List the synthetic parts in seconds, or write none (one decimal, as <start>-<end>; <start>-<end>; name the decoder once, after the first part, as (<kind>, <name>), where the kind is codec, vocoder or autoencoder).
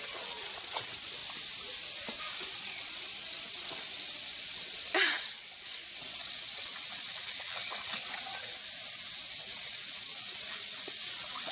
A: 0.0-1.2 (vocoder, WaveNeXt); 2.2-8.6; 9.3-11.5